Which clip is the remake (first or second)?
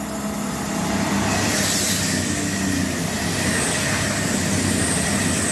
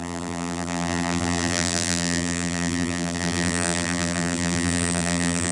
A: second